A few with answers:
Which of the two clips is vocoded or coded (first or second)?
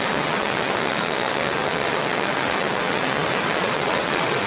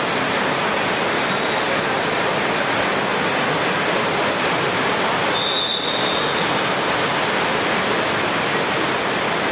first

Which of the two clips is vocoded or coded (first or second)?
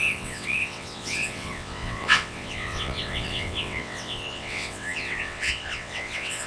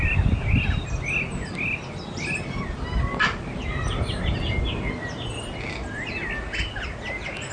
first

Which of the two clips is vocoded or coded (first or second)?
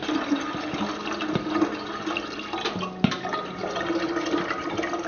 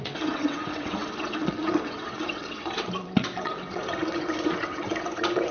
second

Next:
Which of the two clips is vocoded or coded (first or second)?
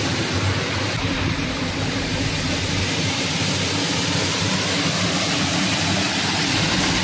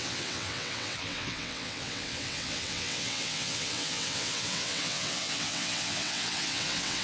second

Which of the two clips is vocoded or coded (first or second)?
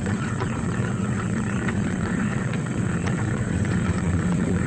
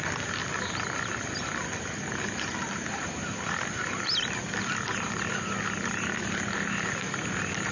first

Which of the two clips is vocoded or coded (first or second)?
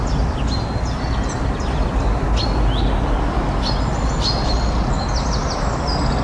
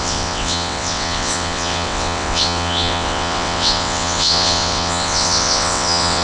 second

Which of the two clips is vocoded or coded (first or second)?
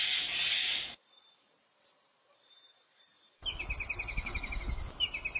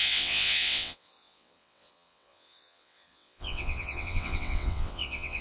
second